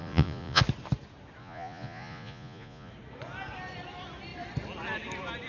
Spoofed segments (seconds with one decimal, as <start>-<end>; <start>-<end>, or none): 0.0-0.6; 1.4-2.9

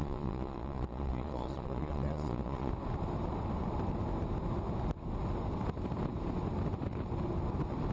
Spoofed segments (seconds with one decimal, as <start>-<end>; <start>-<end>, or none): 0.0-2.7

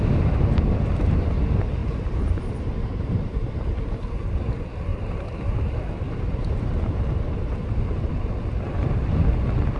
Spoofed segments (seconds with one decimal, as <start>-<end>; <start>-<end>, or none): 1.8-3.5; 4.9-8.1